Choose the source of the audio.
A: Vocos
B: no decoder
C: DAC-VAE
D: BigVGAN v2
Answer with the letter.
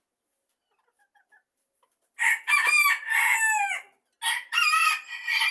B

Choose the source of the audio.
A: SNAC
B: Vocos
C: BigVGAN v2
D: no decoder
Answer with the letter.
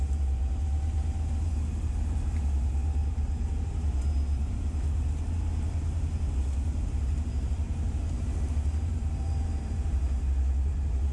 C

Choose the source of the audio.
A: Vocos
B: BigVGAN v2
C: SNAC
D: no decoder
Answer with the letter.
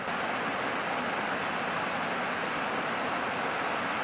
D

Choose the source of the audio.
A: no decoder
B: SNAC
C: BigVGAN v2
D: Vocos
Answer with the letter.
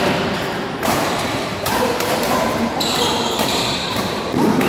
C